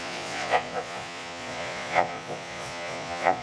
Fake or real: fake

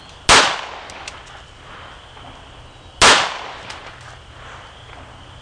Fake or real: real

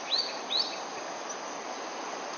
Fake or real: real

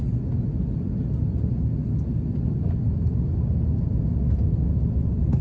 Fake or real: real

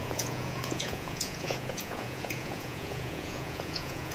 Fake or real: fake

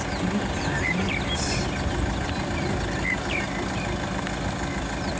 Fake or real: real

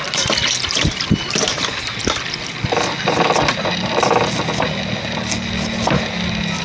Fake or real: real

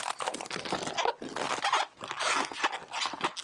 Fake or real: real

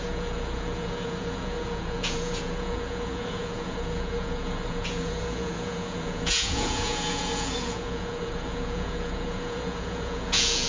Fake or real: fake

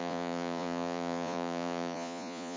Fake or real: fake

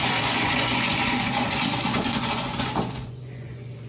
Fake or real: fake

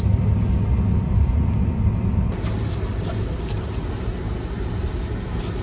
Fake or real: real